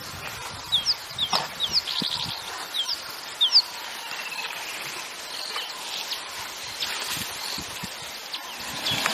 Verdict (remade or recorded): recorded